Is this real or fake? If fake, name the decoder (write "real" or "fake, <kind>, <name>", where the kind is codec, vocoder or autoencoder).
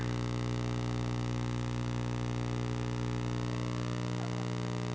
real